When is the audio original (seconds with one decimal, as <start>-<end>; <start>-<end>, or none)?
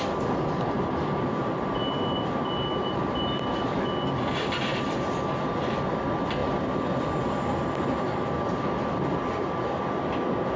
0.0-10.6